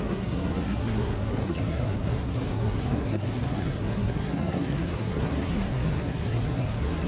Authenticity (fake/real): fake